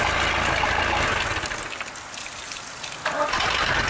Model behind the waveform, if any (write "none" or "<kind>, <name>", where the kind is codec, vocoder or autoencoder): none